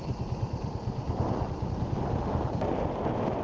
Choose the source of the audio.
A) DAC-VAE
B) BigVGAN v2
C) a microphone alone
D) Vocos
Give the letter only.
C